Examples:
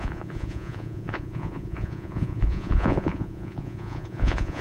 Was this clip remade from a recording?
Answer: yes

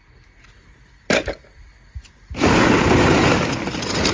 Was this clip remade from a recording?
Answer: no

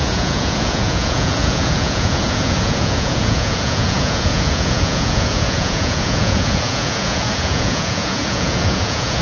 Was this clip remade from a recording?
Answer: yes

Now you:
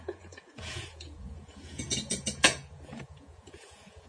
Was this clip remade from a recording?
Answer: yes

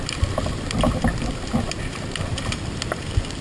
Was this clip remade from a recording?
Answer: no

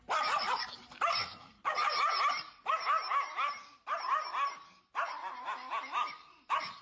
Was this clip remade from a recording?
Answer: no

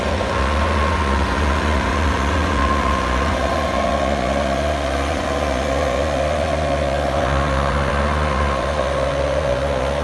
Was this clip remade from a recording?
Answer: yes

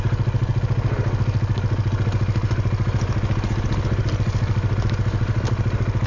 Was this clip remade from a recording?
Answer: no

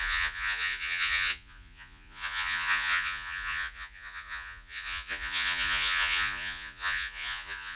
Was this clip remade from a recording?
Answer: yes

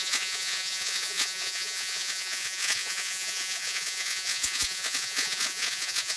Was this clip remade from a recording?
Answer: yes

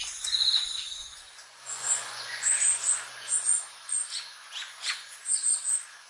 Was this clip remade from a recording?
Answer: yes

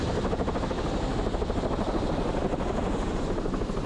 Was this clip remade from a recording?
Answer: no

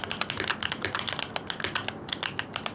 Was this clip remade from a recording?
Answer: no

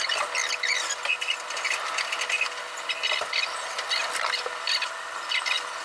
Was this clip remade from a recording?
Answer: no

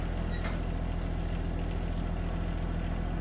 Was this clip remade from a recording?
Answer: no